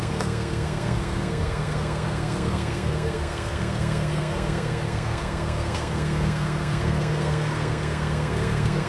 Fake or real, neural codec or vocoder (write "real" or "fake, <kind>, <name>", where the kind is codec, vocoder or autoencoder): fake, codec, SNAC